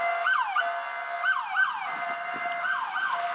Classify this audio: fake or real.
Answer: real